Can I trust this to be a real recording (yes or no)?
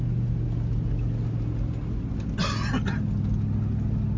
yes